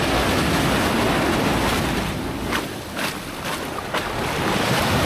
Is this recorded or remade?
recorded